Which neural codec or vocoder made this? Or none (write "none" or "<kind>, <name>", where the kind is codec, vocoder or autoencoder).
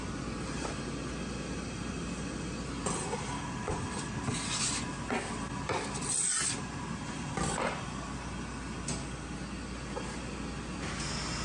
none